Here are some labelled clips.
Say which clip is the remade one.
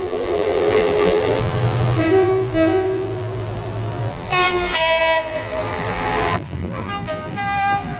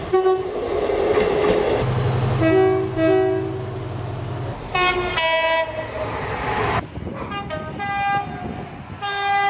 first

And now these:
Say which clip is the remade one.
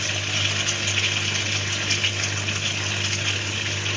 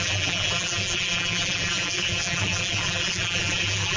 second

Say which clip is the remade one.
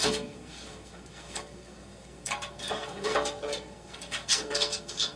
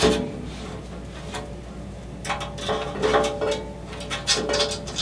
first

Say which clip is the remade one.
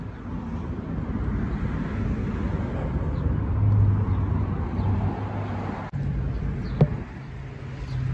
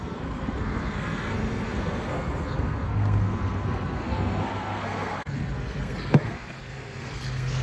second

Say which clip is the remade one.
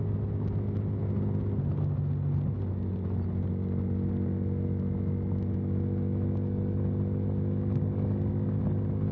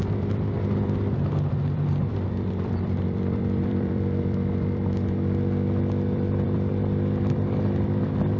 second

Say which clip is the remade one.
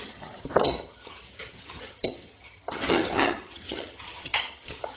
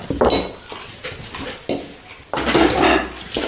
first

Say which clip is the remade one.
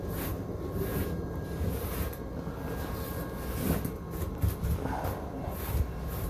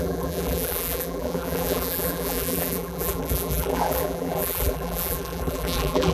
second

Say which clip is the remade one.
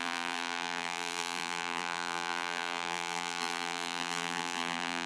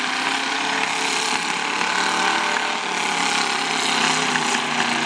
first